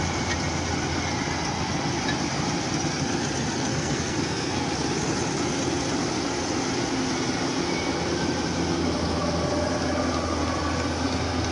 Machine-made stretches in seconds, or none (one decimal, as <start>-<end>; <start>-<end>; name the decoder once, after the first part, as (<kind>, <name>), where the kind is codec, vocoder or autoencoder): 3.6-4.7 (codec, SNAC)